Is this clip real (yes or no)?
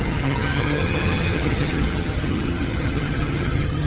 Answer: no